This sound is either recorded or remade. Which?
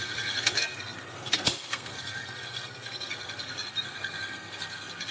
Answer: remade